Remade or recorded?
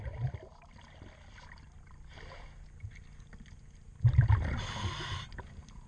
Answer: recorded